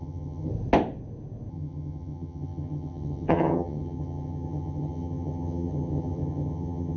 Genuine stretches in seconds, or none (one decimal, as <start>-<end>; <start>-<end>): 0.5-1.5